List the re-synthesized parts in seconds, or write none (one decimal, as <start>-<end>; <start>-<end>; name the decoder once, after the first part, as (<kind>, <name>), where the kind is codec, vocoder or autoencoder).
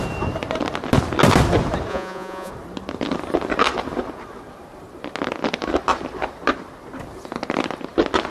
1.9-2.5 (vocoder, Vocos)